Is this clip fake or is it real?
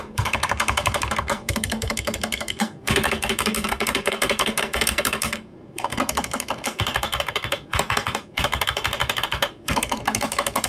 fake